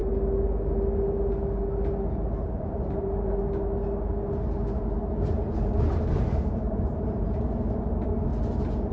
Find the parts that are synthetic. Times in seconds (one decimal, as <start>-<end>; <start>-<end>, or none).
2.1-3.4; 6.1-8.3